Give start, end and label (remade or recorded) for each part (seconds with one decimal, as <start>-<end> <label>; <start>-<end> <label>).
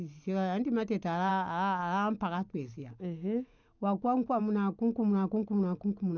0.0-1.3 recorded; 1.3-1.8 remade; 1.8-2.9 recorded; 2.9-4.4 remade; 4.4-6.2 recorded